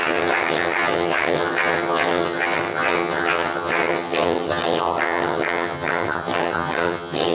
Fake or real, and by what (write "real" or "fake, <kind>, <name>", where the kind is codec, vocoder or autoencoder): fake, vocoder, HiFi-GAN